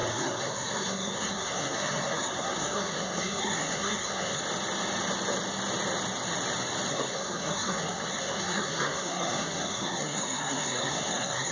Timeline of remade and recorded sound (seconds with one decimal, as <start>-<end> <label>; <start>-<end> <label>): 0.0-4.4 remade; 4.4-6.9 recorded; 6.9-11.5 remade